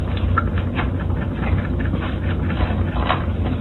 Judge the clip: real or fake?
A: real